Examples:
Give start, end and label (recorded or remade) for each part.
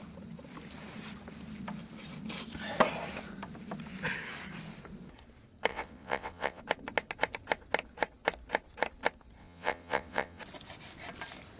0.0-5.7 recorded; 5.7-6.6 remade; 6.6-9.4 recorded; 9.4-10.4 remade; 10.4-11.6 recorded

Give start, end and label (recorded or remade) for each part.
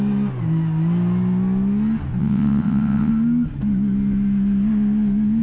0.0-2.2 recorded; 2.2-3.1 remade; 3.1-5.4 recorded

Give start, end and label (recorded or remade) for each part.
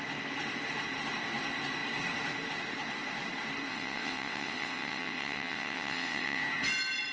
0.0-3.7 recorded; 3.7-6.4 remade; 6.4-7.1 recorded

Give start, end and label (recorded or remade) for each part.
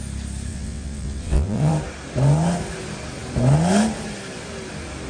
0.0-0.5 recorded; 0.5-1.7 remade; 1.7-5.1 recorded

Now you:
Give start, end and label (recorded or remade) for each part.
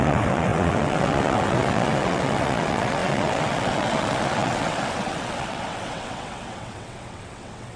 0.0-7.8 remade